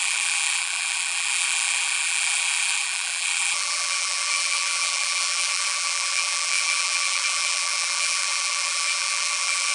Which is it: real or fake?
fake